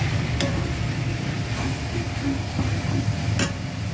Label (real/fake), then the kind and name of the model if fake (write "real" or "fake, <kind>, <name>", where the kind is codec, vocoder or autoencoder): fake, vocoder, BigVGAN v2